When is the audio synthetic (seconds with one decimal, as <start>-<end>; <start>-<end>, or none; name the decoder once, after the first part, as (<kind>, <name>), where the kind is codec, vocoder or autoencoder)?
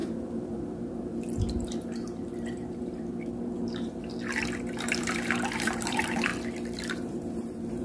0.0-6.3 (vocoder, BigVGAN v2); 6.9-7.8